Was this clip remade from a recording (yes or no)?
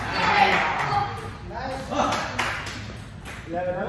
no